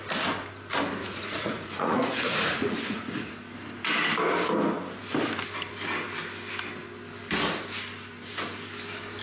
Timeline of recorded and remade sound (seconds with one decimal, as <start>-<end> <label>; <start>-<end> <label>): 0.0-1.0 recorded; 1.0-3.3 remade; 3.3-9.2 recorded